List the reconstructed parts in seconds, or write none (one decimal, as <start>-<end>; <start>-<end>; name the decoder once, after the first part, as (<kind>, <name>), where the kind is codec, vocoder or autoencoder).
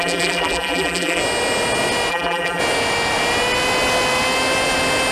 0.0-1.2 (vocoder, BigVGAN v2); 2.1-2.6